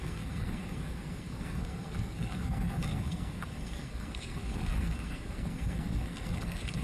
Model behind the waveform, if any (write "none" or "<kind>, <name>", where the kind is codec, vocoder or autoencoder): codec, SNAC